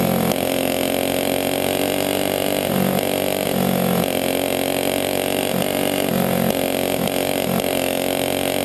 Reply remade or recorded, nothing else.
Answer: recorded